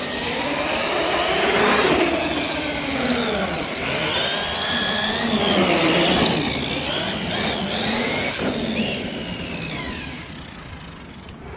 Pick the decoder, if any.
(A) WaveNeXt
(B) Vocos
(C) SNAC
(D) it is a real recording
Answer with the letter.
D